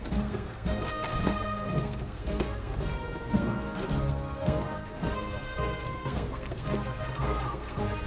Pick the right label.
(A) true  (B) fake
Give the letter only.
B